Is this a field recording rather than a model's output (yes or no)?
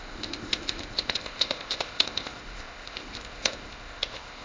no